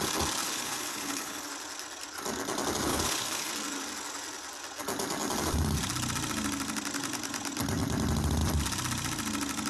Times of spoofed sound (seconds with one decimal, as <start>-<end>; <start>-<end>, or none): 0.4-1.5; 2.9-3.5